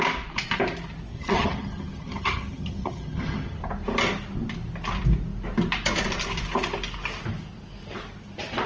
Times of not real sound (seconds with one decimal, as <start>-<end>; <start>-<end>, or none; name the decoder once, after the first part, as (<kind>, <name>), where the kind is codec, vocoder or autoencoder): 1.1-3.6 (vocoder, HiFi-GAN)